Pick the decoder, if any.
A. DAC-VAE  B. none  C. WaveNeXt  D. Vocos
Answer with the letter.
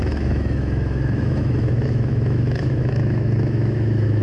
A